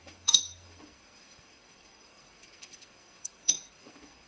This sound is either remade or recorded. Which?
remade